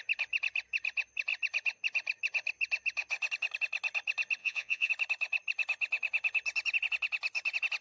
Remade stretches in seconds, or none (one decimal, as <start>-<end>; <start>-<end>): 4.4-4.9